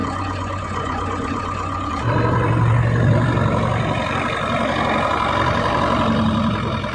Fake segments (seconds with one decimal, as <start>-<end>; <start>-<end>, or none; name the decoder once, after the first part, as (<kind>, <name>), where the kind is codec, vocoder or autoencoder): 0.0-1.9 (vocoder, Vocos)